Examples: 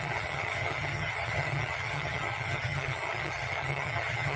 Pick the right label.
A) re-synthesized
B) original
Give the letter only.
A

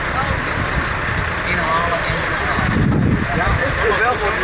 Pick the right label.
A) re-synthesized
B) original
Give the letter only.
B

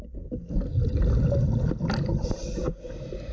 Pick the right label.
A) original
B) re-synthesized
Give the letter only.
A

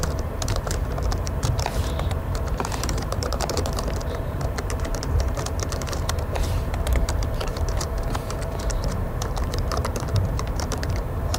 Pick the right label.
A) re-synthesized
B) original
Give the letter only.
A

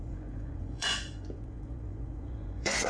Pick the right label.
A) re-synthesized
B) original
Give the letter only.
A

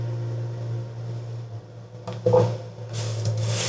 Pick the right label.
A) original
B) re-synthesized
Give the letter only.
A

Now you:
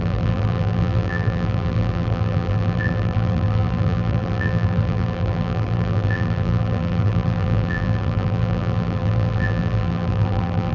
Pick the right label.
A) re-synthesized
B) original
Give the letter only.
A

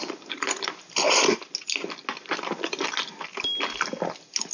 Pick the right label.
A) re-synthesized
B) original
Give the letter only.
B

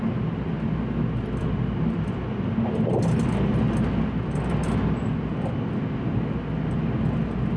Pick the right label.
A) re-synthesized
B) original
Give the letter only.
B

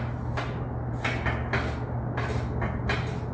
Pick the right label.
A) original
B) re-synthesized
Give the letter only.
A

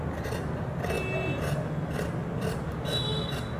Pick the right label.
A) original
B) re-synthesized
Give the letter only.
A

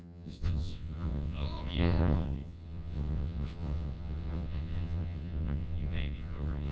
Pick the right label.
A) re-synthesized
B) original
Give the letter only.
A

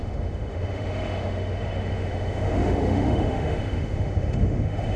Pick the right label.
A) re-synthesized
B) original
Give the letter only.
A